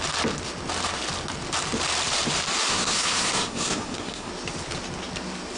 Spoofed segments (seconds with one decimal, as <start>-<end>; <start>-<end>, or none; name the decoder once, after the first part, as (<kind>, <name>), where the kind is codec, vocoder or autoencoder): 2.7-4.3 (codec, SNAC)